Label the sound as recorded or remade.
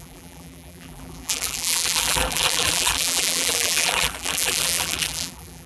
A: remade